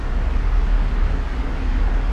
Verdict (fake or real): fake